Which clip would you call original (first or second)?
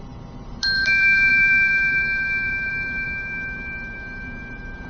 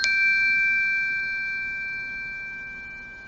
second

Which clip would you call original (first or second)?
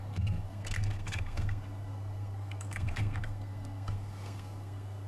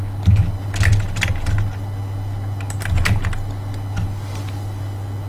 second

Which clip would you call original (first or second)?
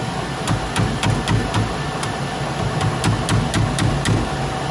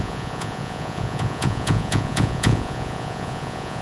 first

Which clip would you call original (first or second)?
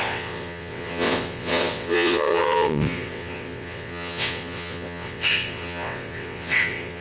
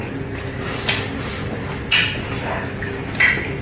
second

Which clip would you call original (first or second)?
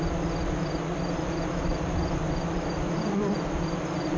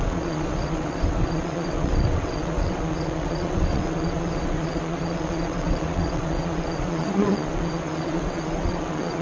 first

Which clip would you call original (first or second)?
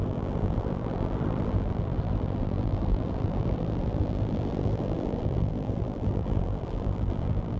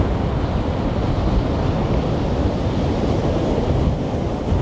second